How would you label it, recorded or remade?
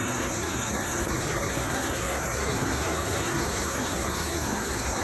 remade